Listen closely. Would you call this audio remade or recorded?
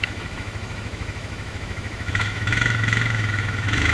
remade